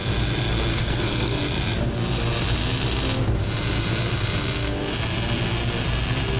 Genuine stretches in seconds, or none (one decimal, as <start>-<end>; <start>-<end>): 0.0-0.7; 1.4-6.4